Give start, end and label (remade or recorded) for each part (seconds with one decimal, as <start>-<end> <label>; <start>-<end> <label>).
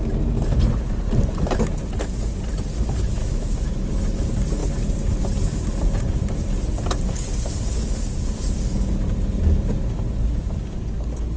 0.0-3.2 recorded; 3.2-3.9 remade; 3.9-11.4 recorded